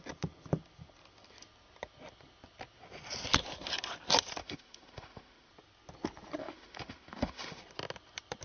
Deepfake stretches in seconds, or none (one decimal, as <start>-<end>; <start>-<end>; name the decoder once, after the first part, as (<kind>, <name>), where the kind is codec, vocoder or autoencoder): 4.4-5.5 (autoencoder, DAC-VAE); 6.4-7.6